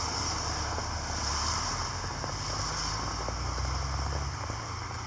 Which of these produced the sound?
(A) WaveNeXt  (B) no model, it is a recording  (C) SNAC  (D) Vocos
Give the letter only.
B